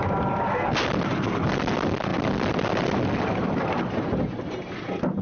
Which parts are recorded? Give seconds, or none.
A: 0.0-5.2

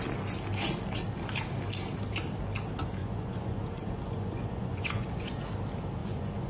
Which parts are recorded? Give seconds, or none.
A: 0.0-3.0; 5.4-6.0

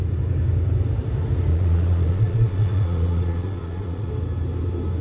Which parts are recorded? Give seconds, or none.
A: 0.0-1.5; 4.1-5.0